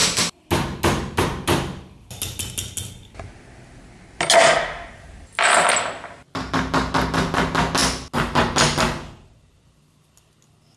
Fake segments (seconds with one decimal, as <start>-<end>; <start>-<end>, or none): none